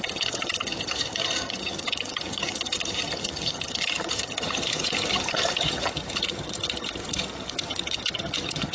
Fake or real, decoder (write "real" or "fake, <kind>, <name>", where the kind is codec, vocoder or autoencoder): fake, vocoder, HiFi-GAN